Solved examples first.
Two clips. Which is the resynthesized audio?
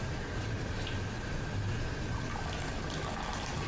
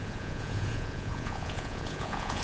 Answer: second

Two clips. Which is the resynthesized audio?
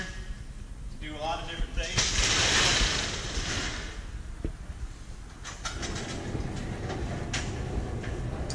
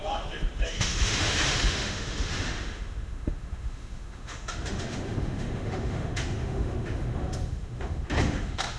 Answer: second